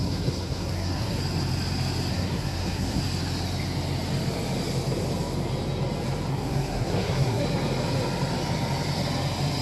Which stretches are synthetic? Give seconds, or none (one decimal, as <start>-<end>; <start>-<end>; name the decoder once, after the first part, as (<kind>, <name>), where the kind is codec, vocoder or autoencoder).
0.0-1.2 (codec, SNAC); 2.1-3.0; 6.3-7.4